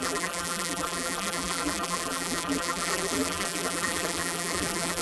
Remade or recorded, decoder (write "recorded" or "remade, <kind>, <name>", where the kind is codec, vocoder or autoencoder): remade, vocoder, BigVGAN v2